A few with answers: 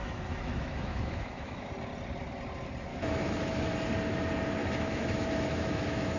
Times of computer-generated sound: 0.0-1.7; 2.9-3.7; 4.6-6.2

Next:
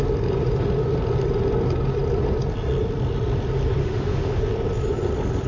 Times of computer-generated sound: 3.8-4.4

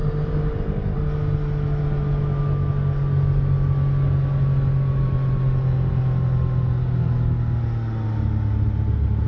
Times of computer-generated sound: none

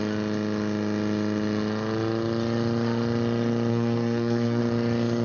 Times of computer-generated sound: 3.7-4.6